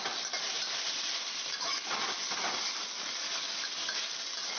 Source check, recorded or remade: recorded